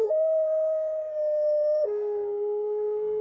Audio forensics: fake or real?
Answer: fake